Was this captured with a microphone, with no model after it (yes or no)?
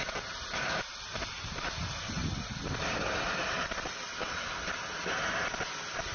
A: yes